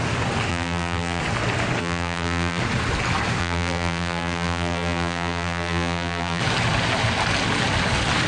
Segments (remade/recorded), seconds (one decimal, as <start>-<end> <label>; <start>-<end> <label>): 0.0-0.5 recorded; 0.5-1.2 remade; 1.2-1.8 recorded; 1.8-2.6 remade; 2.6-3.4 recorded; 3.4-6.4 remade; 6.4-8.3 recorded